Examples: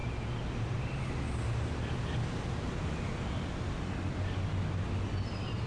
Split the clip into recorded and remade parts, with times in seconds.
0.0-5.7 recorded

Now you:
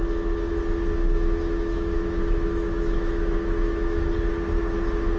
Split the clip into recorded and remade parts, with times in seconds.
0.0-1.0 recorded; 1.0-4.1 remade; 4.1-5.2 recorded

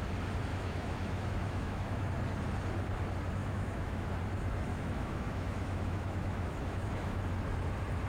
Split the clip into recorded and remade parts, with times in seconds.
0.0-0.5 recorded; 0.5-2.1 remade; 2.1-3.4 recorded; 3.4-4.1 remade; 4.1-4.7 recorded; 4.7-7.2 remade; 7.2-8.1 recorded

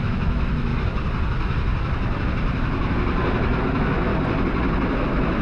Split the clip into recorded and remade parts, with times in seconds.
0.0-0.7 remade; 0.7-3.6 recorded; 3.6-4.1 remade; 4.1-4.9 recorded; 4.9-5.4 remade